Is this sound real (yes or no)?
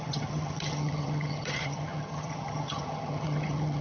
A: no